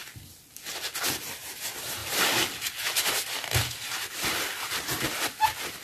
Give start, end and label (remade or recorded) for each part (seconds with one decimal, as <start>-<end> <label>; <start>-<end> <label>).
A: 0.0-5.8 recorded